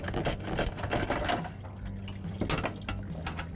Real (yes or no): yes